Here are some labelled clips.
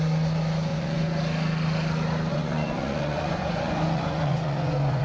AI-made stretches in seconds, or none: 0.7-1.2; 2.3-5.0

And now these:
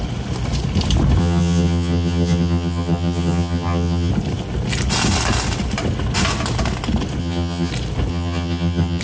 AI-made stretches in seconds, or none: 1.2-4.1; 7.2-7.7; 8.1-9.0

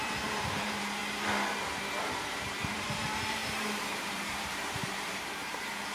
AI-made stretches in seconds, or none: 0.0-1.0; 1.6-5.9

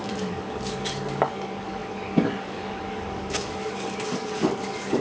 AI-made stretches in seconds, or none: 0.0-5.0

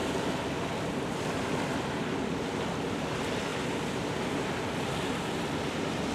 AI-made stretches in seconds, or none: 3.5-6.1

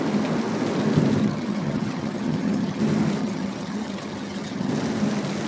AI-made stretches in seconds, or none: 1.2-2.8; 3.2-4.7

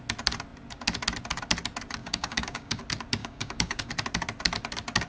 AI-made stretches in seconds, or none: 2.0-2.8; 3.2-3.9